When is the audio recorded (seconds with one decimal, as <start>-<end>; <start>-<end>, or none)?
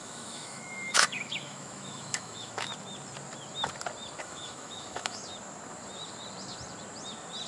2.7-4.2; 5.2-7.5